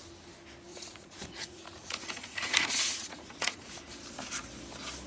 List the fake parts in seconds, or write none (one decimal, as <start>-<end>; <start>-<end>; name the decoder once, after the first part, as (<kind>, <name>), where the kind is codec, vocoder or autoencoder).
0.7-3.8 (vocoder, Vocos)

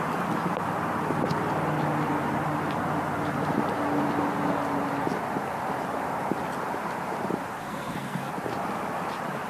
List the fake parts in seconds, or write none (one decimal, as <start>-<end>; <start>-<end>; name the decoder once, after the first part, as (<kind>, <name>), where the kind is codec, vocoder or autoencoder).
7.6-8.3 (codec, SNAC)

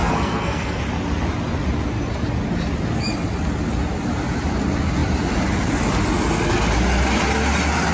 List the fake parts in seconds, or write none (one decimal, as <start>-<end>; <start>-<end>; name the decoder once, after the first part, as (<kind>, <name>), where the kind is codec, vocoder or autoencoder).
0.0-0.8 (codec, SNAC)

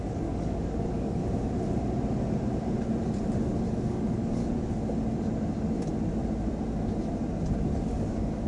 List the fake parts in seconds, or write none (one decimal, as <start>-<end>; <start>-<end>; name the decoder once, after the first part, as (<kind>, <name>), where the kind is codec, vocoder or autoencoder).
0.0-1.2 (codec, DAC); 3.7-4.4; 7.8-8.5

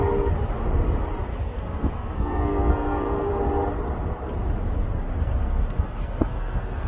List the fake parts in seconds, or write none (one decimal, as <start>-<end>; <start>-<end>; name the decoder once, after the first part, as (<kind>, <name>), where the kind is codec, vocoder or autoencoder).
1.3-3.3 (codec, SNAC); 5.2-6.9

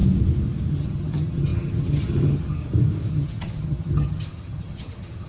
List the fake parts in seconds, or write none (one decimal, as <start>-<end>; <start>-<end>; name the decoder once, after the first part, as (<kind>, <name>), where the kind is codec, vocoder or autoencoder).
0.7-2.6 (vocoder, HiFi-GAN); 3.1-5.3